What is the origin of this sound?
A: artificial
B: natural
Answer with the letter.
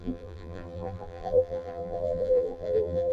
A